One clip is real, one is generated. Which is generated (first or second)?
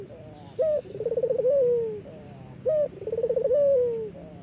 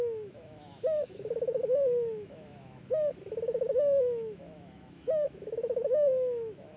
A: second